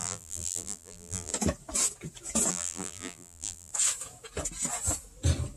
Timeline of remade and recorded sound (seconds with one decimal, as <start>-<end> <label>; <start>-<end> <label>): 0.0-1.3 remade; 1.3-2.5 recorded; 2.5-3.7 remade; 3.7-5.6 recorded